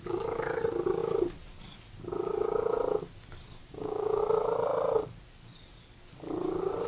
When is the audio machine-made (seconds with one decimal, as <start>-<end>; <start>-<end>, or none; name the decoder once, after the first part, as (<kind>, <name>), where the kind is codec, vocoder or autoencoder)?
3.6-4.2 (codec, DAC)

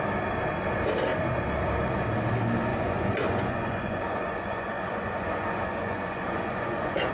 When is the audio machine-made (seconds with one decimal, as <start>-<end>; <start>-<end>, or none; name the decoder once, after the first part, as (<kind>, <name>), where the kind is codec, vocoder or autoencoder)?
2.7-7.1 (vocoder, Vocos)

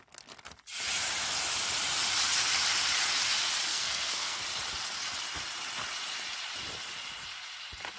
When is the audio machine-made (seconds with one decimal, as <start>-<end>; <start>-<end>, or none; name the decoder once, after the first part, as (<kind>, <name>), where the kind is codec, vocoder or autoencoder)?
3.7-4.4 (codec, SNAC)

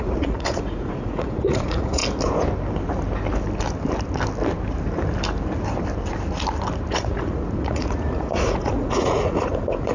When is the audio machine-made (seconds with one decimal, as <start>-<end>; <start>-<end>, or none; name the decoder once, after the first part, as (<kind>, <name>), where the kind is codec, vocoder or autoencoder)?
0.0-2.0 (vocoder, Vocos); 6.9-9.9

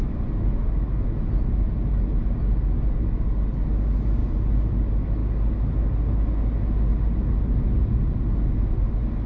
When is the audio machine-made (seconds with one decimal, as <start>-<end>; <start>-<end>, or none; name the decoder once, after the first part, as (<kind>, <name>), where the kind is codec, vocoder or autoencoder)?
none

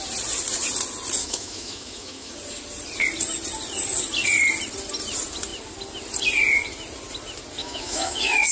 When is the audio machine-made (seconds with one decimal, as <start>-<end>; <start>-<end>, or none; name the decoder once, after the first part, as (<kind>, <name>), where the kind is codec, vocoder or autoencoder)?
1.2-2.3 (autoencoder, DAC-VAE); 7.6-8.5

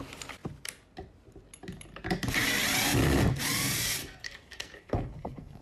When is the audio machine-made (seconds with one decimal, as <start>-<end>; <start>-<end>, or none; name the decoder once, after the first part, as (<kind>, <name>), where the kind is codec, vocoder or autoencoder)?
4.0-5.6 (codec, SNAC)

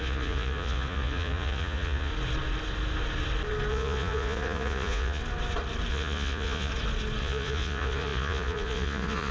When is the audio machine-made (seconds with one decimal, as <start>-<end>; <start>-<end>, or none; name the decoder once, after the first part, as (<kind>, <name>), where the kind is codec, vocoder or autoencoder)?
0.0-2.1 (vocoder, Vocos); 3.7-5.2; 5.9-6.7; 7.2-9.3